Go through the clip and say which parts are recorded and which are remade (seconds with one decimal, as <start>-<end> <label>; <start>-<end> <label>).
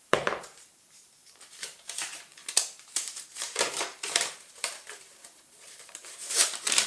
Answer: 0.0-6.9 remade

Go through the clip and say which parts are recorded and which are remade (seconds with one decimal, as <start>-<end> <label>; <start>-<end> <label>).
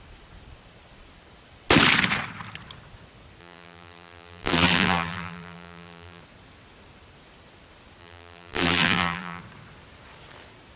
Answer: 0.0-3.4 recorded; 3.4-6.2 remade; 6.2-8.0 recorded; 8.0-9.4 remade; 9.4-10.8 recorded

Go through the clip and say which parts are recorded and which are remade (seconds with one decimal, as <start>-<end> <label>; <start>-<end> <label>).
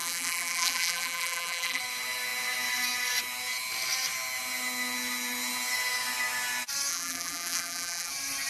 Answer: 0.0-1.8 remade; 1.8-6.9 recorded; 6.9-8.1 remade; 8.1-8.5 recorded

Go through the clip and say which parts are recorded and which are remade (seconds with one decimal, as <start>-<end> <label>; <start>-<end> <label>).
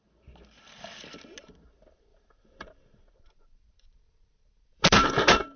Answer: 0.0-2.1 recorded; 2.1-5.6 remade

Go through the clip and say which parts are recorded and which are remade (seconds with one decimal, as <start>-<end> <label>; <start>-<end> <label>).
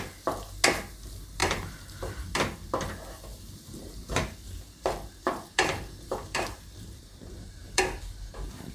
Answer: 0.0-1.4 recorded; 1.4-2.4 remade; 2.4-3.3 recorded; 3.3-7.8 remade; 7.8-8.7 recorded